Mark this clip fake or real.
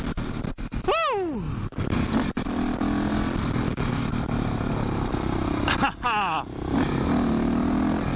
real